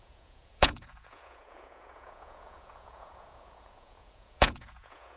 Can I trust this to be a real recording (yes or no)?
no